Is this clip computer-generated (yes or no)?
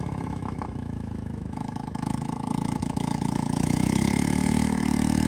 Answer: yes